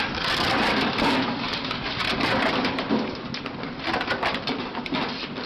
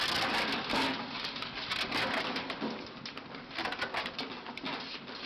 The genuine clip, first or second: second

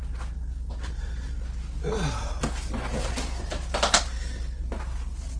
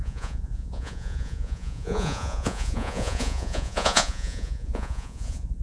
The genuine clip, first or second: first